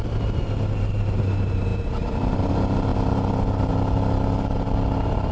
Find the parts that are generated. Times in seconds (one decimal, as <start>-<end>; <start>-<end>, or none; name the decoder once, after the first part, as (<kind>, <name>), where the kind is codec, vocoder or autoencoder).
none